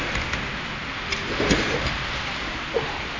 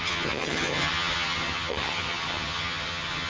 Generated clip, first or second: second